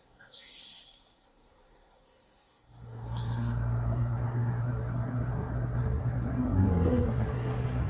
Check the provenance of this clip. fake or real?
fake